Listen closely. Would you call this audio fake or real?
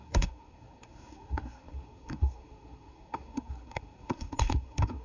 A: fake